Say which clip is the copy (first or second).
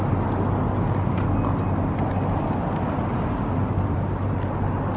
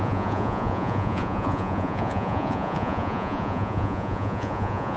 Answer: second